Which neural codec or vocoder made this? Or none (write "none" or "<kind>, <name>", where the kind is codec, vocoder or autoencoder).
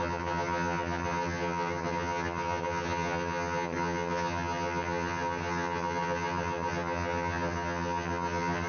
vocoder, HiFi-GAN